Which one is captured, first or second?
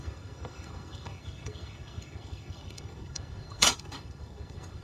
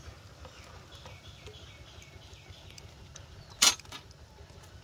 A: second